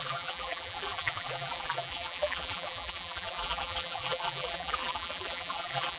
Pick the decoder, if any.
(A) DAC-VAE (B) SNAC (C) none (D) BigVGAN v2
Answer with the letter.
D